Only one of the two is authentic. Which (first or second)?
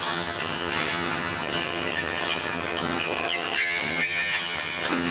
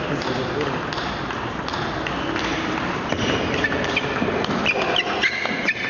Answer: second